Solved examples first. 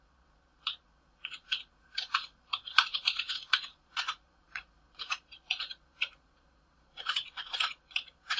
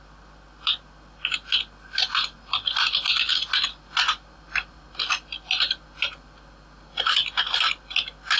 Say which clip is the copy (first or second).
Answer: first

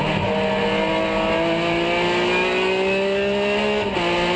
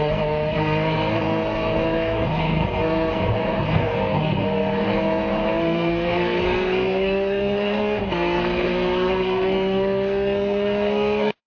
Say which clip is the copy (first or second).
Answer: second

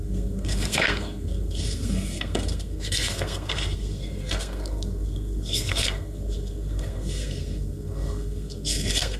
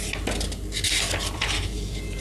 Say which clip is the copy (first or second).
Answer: first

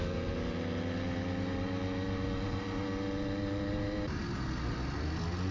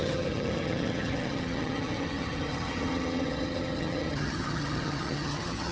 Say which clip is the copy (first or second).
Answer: second